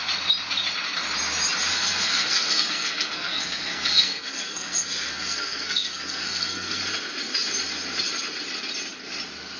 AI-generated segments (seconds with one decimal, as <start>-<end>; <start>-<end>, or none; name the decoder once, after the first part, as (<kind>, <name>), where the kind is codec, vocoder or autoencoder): 1.7-6.8 (codec, SNAC)